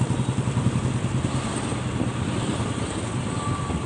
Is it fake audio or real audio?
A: real